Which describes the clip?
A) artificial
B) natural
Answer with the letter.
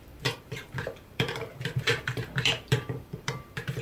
A